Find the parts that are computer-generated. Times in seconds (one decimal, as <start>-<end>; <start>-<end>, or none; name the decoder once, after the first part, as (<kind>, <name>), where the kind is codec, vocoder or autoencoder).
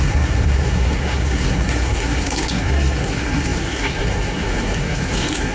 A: 0.0-5.5 (codec, SNAC)